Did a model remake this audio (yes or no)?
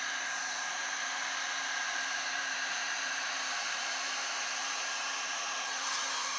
yes